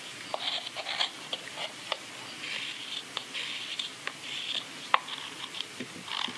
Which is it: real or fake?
fake